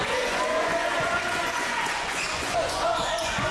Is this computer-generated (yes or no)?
yes